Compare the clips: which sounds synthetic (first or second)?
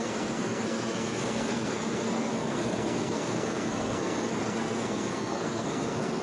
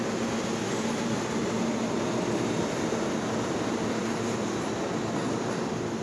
first